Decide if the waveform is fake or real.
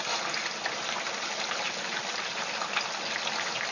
real